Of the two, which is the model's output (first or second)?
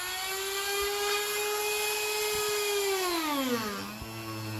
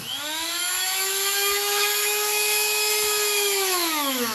second